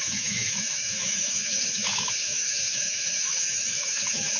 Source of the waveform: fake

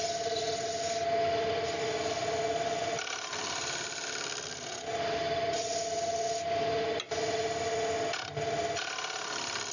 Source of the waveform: real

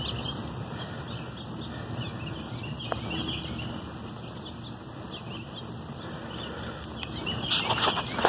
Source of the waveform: real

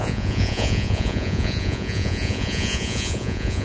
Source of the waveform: fake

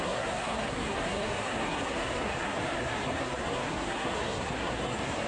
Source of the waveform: fake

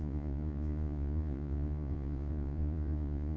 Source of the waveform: fake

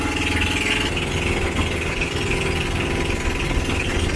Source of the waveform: real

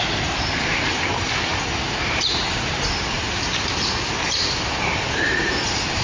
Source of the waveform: fake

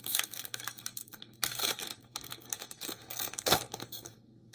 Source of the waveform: fake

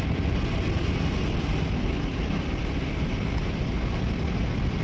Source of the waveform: real